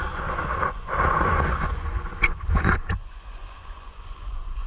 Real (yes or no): no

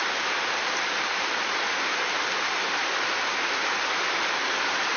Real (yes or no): yes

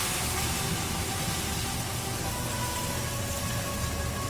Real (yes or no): yes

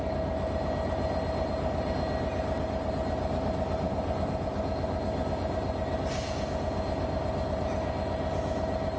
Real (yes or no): yes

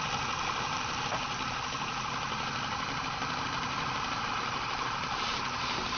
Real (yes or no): yes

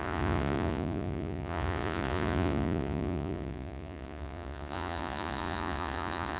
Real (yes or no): no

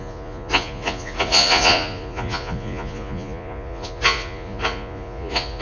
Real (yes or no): no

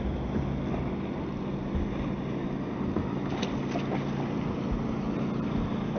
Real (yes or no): yes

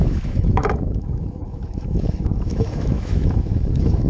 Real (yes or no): no